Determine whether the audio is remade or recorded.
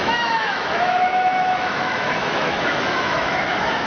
remade